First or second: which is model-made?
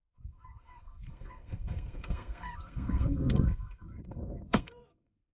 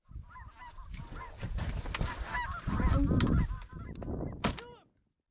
first